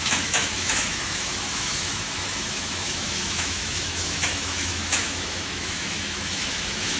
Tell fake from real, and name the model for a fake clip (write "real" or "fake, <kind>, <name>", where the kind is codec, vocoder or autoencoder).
fake, autoencoder, DAC-VAE